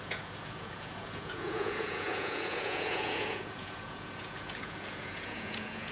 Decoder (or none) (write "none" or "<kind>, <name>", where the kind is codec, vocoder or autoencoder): vocoder, Vocos